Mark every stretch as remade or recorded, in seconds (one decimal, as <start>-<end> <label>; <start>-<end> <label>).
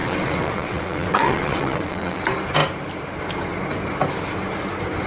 0.0-2.2 remade; 2.2-5.1 recorded